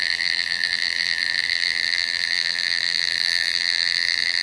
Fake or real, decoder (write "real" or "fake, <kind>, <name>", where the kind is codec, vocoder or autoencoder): fake, vocoder, BigVGAN v2